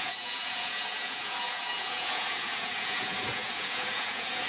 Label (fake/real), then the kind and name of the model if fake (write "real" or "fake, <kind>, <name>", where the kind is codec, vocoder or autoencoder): fake, vocoder, Vocos